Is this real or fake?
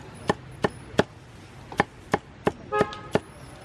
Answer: real